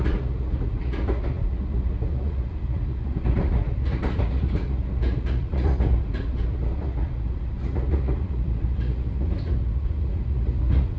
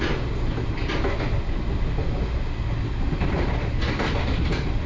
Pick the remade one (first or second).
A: first